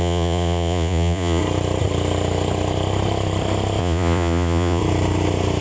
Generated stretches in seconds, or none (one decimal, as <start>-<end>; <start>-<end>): 0.0-1.4; 3.8-4.8